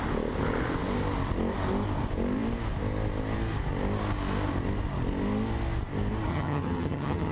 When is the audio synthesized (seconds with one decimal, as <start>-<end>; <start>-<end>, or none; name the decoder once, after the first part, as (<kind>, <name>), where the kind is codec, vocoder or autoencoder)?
6.3-7.3 (vocoder, HiFi-GAN)